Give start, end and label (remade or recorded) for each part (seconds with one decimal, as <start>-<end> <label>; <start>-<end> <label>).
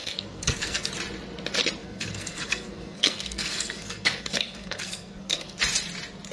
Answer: 0.0-0.9 remade; 0.9-1.8 recorded; 1.8-5.6 remade; 5.6-6.3 recorded